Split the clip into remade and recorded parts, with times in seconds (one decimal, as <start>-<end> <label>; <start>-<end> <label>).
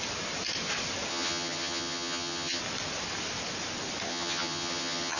0.0-1.1 recorded; 1.1-2.6 remade; 2.6-4.1 recorded; 4.1-5.2 remade